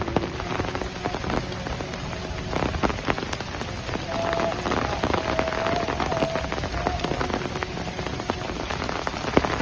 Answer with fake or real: real